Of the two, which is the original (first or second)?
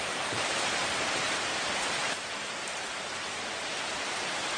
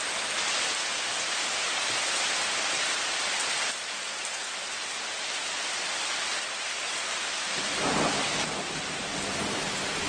second